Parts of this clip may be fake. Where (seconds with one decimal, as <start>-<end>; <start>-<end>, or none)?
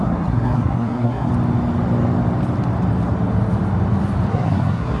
0.0-1.3; 4.3-5.0